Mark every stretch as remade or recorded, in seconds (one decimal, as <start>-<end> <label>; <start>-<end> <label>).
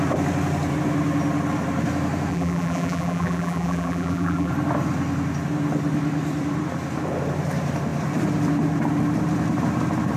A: 0.0-2.3 recorded; 2.3-4.5 remade; 4.5-10.2 recorded